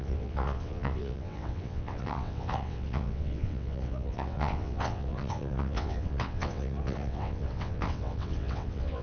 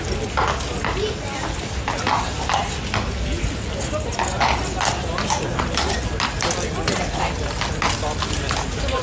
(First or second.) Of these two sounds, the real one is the second